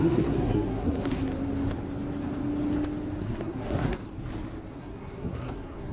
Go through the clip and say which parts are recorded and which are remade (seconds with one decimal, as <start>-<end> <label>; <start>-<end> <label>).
0.0-1.3 remade; 1.3-3.2 recorded; 3.2-4.0 remade; 4.0-4.7 recorded; 4.7-5.9 remade